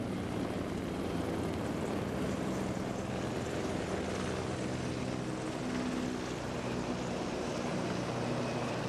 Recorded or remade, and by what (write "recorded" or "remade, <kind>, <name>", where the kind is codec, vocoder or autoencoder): recorded